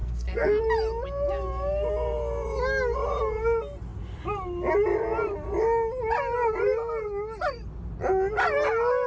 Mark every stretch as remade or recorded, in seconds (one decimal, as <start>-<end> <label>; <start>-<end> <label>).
0.0-0.6 remade; 0.6-9.1 recorded